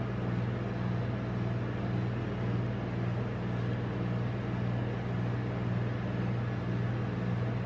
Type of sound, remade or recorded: recorded